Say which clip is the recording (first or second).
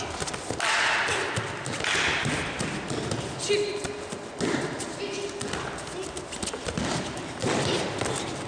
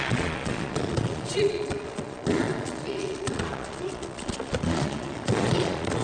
first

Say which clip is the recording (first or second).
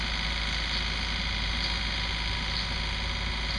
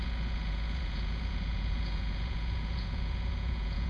first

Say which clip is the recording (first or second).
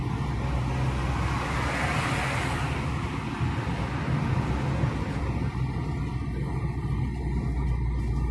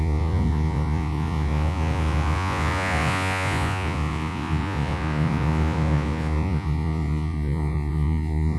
first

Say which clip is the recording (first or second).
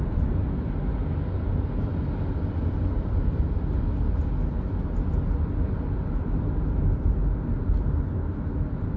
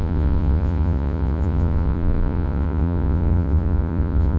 first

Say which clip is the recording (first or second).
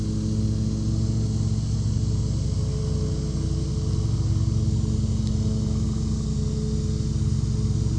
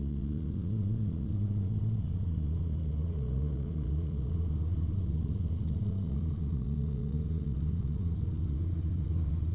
first